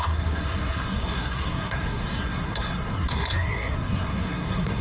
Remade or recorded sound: remade